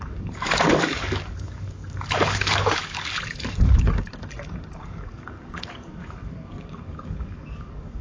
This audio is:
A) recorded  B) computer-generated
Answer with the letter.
B